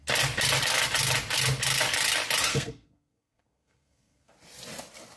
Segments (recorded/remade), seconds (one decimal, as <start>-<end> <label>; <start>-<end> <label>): 0.0-2.5 recorded; 2.5-4.3 remade; 4.3-5.2 recorded